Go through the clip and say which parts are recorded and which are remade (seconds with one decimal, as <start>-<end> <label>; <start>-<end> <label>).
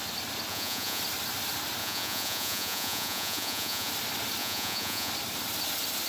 0.0-0.5 recorded; 0.5-1.0 remade; 1.0-1.8 recorded; 1.8-3.9 remade; 3.9-4.4 recorded; 4.4-5.1 remade; 5.1-6.1 recorded